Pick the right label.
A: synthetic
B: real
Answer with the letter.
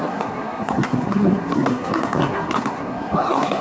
A